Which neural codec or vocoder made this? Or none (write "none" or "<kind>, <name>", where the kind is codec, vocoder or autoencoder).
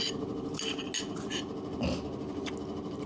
none